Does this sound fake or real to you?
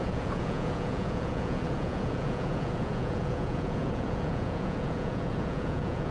fake